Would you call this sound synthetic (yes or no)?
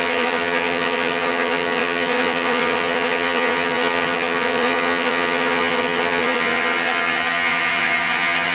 yes